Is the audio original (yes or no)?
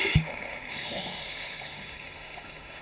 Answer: no